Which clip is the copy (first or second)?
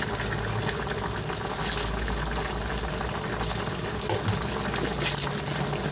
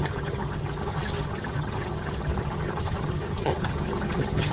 second